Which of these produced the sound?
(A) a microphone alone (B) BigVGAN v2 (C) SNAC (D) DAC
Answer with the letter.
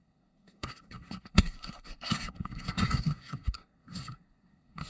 C